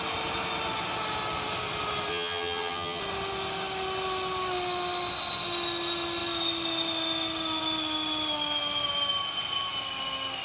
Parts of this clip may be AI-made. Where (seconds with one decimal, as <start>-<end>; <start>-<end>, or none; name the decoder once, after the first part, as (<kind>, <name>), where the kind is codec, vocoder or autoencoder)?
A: 2.1-3.0 (vocoder, HiFi-GAN)